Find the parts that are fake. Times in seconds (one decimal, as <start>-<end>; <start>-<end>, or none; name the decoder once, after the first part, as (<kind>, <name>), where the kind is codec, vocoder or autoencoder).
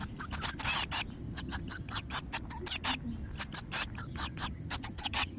1.2-2.1 (vocoder, HiFi-GAN); 4.0-5.4